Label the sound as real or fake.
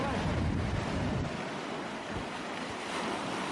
real